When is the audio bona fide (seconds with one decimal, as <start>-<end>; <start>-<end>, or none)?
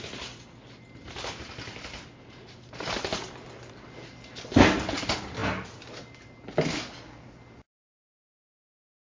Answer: 0.0-9.1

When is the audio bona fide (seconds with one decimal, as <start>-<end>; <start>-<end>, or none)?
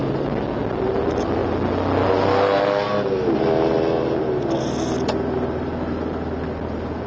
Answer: 0.0-7.1